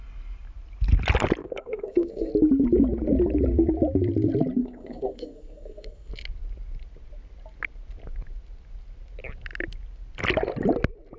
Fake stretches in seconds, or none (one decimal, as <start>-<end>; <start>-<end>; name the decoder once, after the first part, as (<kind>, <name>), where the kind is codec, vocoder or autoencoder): 1.4-2.3 (codec, SNAC); 4.6-6.1